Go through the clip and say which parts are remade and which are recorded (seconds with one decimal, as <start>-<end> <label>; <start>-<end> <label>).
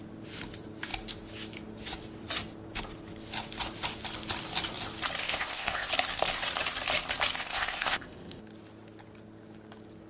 0.0-5.2 recorded; 5.2-5.9 remade; 5.9-7.4 recorded; 7.4-8.4 remade; 8.4-10.1 recorded